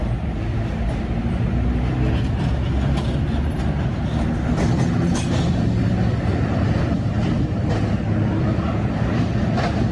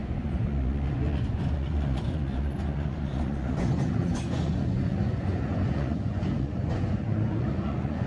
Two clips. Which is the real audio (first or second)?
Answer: first